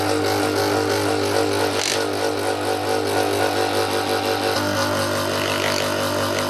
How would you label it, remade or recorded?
recorded